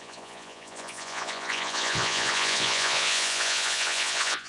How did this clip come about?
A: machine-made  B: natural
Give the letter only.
A